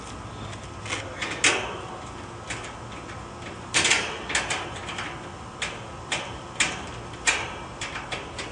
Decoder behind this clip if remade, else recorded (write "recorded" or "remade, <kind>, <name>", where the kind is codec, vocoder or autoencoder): recorded